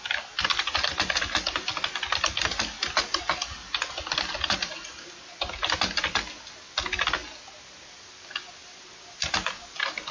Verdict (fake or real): real